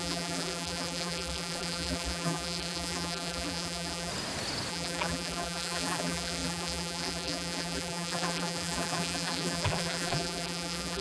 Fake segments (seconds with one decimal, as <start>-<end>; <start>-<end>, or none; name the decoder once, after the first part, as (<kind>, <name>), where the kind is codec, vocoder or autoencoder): 0.0-4.1 (vocoder, BigVGAN v2); 4.7-11.0